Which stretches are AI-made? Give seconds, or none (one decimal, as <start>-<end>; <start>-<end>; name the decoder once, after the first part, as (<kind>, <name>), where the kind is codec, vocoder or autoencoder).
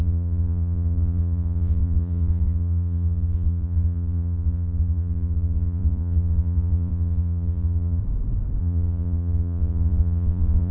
0.0-8.0 (vocoder, Vocos); 8.6-10.7